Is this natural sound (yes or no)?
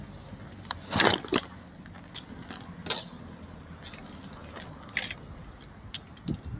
yes